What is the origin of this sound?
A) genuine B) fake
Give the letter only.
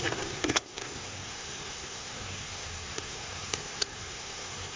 B